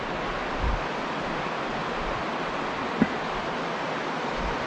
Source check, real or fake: real